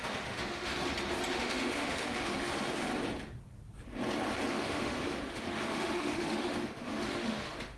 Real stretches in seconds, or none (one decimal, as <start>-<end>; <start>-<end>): 0.7-1.3; 2.9-4.5